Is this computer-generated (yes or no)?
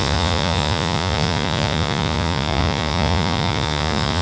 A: yes